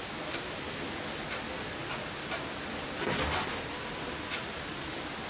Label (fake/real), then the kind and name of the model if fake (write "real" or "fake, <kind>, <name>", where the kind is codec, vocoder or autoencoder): real